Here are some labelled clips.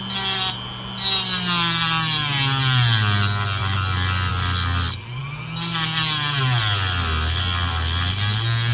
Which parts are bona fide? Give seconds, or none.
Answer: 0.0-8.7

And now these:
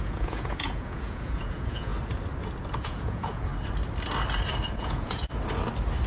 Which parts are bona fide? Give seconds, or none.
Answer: 1.9-2.8; 3.5-4.7; 5.2-6.1